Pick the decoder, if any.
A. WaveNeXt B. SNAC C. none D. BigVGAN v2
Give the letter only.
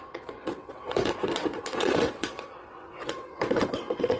A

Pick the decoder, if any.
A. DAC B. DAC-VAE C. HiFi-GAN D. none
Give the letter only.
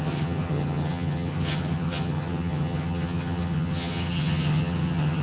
C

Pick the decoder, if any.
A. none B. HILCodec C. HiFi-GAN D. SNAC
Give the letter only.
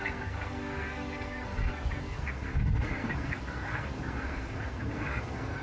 D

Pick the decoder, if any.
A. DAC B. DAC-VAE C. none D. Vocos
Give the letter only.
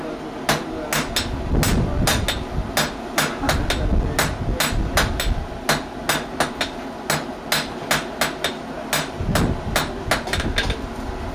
C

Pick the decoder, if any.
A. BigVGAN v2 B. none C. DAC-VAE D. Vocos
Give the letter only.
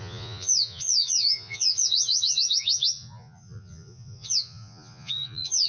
D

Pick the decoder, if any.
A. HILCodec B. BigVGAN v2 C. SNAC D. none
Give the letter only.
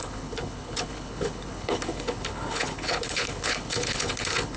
A